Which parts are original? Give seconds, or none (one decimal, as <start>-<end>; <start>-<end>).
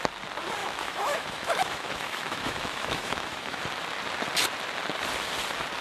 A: 0.0-0.6; 3.6-5.8